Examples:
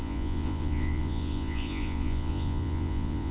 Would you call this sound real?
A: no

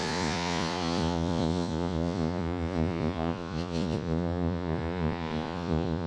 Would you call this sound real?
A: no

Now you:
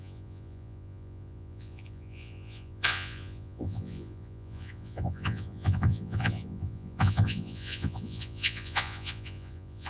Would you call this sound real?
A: no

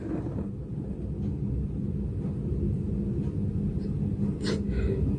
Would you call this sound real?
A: yes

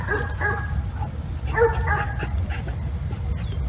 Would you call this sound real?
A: yes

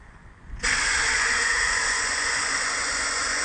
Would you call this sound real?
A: no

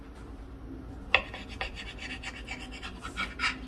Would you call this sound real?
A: yes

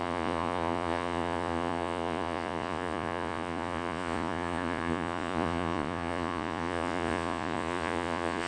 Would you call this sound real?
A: no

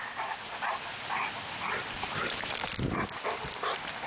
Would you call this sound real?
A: yes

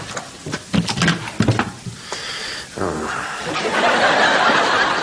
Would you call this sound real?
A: yes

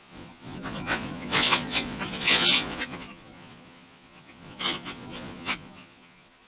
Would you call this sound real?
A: no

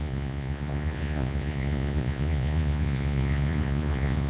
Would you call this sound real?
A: no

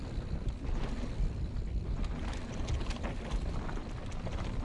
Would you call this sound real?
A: yes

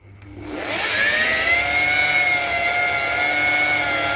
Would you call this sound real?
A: yes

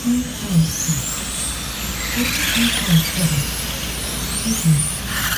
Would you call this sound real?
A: yes